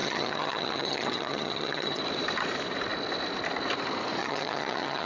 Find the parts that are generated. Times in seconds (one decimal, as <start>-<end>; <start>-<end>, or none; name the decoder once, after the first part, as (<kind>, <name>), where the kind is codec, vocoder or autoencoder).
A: 0.0-2.0 (vocoder, HiFi-GAN); 4.2-5.1

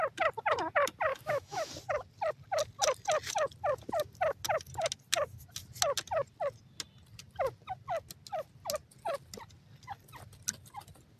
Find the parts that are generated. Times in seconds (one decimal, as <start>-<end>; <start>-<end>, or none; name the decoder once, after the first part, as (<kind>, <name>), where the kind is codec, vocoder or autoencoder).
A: 1.1-1.7 (autoencoder, DAC-VAE)

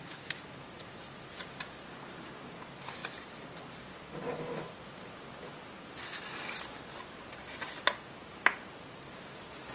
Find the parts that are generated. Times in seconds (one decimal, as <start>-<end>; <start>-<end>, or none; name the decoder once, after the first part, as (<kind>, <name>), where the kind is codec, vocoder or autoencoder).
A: none

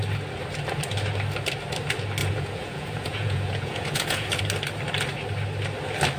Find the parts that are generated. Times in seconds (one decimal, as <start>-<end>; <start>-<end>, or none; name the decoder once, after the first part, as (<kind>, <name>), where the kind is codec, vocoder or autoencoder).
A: 2.2-4.4 (vocoder, Vocos)

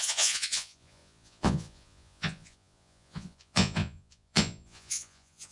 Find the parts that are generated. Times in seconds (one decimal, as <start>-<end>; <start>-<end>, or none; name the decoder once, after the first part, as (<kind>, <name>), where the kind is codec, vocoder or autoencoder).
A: 0.0-5.5 (vocoder, Vocos)